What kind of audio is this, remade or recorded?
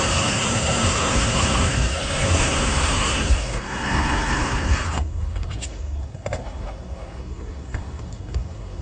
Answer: remade